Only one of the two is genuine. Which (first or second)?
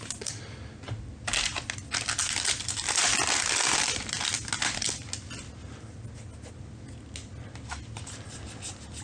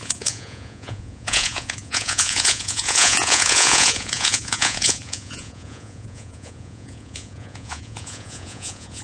first